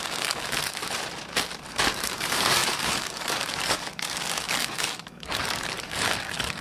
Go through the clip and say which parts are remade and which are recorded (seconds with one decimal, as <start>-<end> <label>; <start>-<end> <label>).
0.0-0.8 remade; 0.8-1.7 recorded; 1.7-6.6 remade